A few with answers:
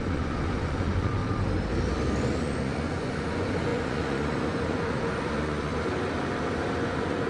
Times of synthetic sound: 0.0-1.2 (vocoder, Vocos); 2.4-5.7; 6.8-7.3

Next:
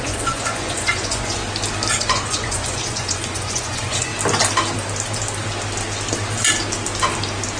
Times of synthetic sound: 0.0-1.4 (vocoder, Vocos); 1.9-4.1

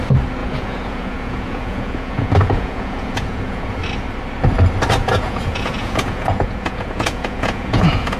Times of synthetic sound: 0.4-3.8 (vocoder, Vocos); 5.0-8.2

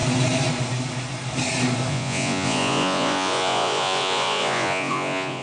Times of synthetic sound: 1.9-5.4 (vocoder, Vocos)

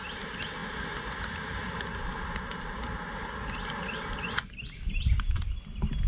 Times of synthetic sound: none